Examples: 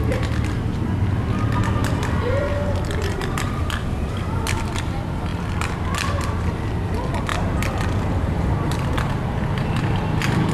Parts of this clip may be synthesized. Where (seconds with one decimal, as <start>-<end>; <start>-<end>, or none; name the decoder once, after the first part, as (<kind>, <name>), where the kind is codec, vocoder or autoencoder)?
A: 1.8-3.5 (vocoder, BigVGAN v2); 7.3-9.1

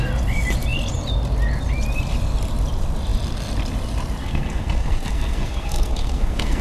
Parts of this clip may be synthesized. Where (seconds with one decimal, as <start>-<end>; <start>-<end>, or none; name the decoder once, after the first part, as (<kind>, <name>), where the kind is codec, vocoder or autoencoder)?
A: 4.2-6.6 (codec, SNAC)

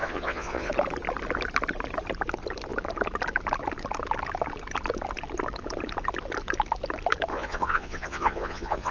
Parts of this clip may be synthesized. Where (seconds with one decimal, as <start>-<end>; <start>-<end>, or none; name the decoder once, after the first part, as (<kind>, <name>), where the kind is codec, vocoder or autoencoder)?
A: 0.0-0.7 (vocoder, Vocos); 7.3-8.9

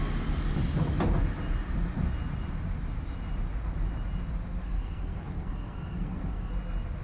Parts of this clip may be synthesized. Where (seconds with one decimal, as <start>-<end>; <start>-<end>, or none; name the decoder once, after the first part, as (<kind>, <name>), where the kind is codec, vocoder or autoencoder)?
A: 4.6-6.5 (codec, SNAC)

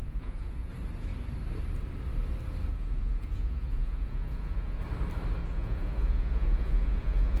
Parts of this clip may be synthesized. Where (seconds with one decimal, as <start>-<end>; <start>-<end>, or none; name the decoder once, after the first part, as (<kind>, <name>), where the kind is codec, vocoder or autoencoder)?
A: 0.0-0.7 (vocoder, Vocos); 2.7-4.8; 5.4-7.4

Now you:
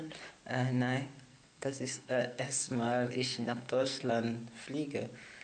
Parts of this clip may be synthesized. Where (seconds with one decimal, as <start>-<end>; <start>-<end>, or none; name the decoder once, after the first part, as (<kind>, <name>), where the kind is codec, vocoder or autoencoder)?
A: 1.3-4.1 (codec, SNAC)